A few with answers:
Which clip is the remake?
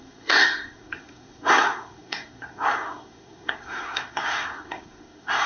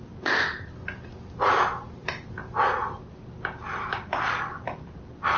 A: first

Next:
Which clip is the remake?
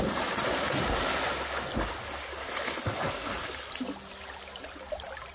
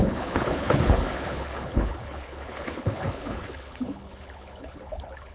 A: second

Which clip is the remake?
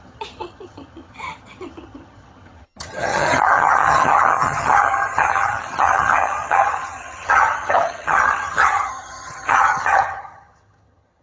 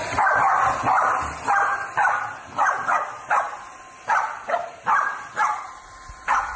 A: first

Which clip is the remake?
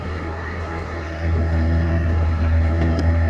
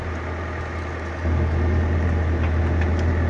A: first